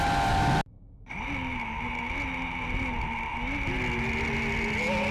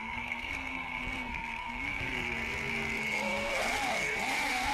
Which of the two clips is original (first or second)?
first